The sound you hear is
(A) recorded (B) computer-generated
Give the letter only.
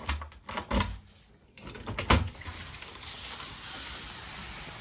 A